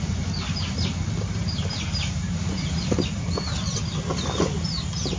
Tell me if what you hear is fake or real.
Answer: fake